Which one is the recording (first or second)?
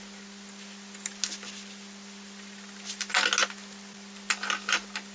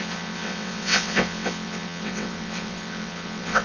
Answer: first